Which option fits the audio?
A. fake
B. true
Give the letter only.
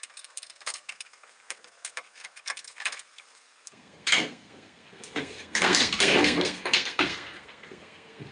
A